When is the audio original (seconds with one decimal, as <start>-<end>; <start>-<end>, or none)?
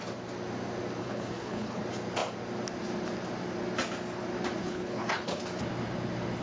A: 0.0-1.0; 1.8-4.6; 5.4-6.4